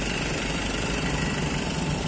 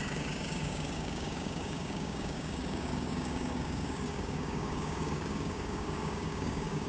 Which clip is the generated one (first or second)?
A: second